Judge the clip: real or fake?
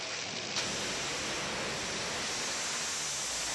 real